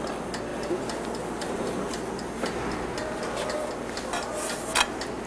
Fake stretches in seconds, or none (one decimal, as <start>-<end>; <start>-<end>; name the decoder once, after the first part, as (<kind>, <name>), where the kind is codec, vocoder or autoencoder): none